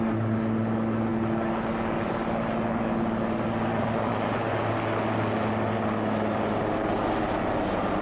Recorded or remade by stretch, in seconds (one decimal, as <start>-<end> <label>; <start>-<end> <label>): 0.0-3.7 recorded; 3.7-4.6 remade; 4.6-8.0 recorded